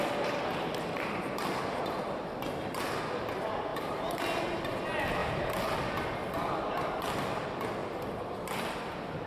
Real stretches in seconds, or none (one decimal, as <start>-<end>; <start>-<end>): 0.0-3.7; 4.4-9.3